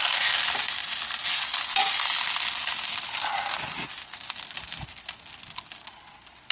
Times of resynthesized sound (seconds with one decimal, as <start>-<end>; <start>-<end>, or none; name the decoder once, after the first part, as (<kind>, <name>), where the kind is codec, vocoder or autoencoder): none